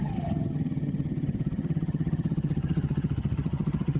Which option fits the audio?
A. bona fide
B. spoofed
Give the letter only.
B